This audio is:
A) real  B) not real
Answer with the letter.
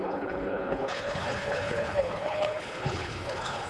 B